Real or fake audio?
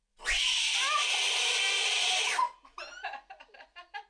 real